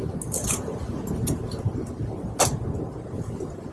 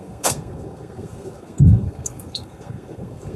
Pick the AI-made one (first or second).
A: second